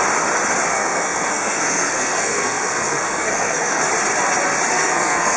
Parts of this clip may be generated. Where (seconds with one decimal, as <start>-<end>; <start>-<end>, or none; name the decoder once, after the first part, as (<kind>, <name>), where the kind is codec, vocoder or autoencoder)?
0.7-3.9 (codec, SNAC); 4.7-5.4